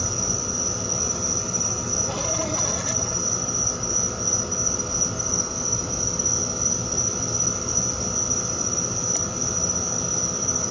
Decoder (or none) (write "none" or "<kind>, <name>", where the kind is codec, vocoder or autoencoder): none